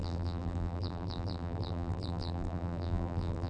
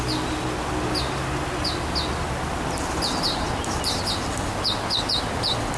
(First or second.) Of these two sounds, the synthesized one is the first